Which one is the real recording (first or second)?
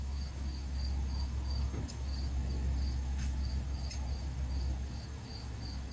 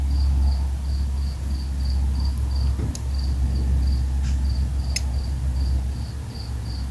second